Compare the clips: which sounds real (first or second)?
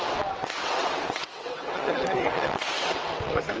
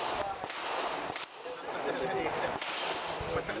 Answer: second